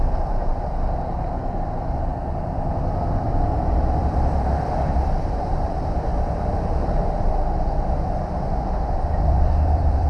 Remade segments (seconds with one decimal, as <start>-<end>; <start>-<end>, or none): 0.0-2.1; 2.6-6.1; 9.3-10.1